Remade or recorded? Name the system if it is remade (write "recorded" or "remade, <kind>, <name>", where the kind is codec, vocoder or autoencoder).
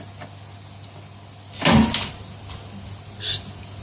recorded